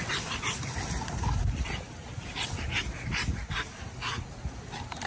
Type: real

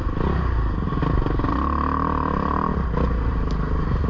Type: real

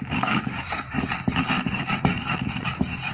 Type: fake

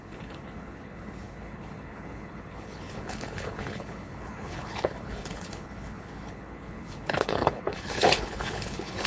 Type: fake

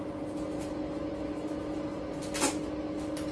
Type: real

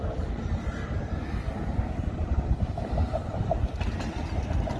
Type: real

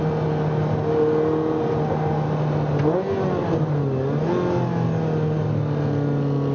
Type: real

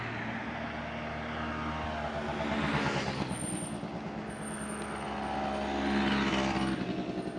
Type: real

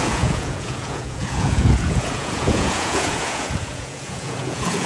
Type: fake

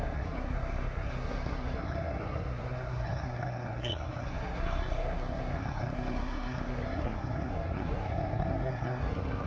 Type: fake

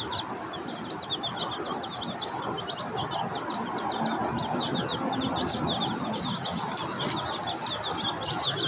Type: real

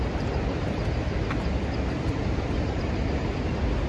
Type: real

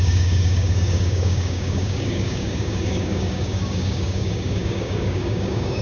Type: fake